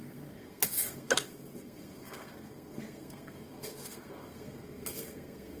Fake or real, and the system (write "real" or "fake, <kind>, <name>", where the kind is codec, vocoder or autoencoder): fake, codec, SNAC